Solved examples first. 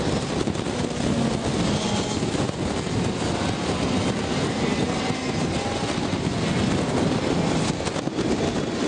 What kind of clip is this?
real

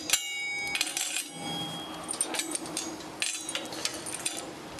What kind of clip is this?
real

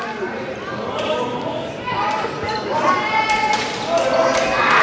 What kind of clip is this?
real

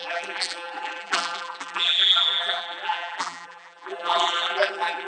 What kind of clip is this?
fake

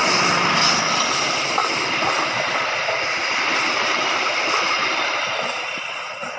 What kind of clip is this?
fake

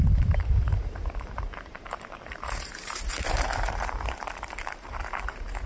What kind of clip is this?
fake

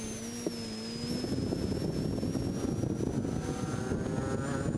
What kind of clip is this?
real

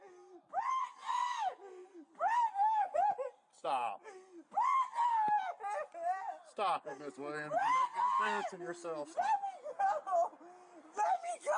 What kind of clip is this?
real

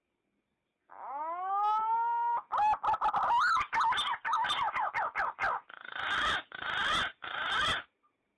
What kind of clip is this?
real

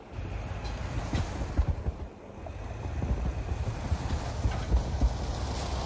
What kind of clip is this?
real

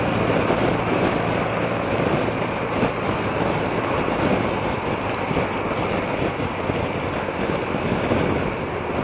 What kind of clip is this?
real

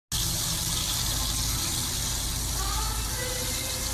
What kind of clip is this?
real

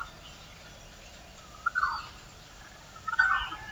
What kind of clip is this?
real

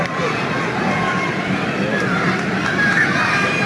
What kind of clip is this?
fake